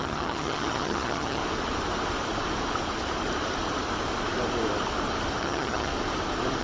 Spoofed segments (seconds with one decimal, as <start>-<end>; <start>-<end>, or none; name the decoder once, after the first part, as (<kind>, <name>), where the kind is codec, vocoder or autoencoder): 0.0-1.4 (vocoder, HiFi-GAN); 5.4-5.9